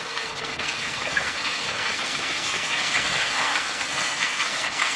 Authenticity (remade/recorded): remade